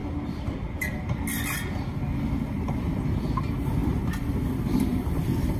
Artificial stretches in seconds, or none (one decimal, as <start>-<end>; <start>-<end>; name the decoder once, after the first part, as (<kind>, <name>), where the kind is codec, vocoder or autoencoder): 4.9-5.6 (vocoder, BigVGAN v2)

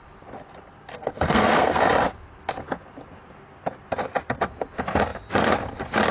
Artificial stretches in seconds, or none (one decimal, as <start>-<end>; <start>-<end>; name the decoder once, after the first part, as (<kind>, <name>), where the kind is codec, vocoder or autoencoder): 0.9-1.8 (codec, SNAC)

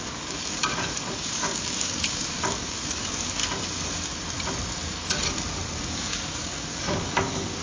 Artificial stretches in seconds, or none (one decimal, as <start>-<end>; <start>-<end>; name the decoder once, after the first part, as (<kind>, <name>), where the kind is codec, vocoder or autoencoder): 0.0-3.4 (codec, DAC); 5.8-7.6

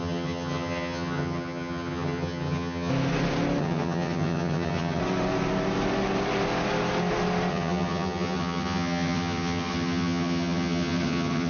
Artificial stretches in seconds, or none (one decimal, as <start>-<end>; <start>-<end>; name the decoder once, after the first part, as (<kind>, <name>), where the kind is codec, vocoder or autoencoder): 0.0-2.9 (vocoder, HiFi-GAN); 3.6-5.0; 7.5-11.5

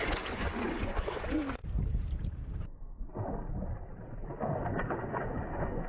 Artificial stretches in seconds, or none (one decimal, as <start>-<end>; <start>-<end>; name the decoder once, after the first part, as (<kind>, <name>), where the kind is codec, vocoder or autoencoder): 0.0-1.6 (vocoder, Vocos); 5.1-5.9